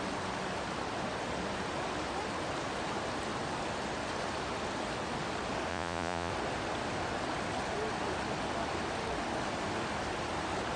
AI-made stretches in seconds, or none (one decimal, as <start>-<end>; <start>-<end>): 5.7-6.3